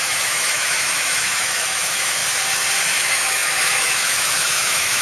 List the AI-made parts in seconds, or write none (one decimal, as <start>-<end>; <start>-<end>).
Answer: 0.0-2.2; 2.8-5.0